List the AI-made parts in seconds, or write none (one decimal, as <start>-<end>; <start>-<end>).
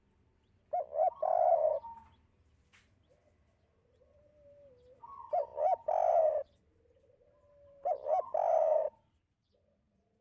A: 5.5-9.2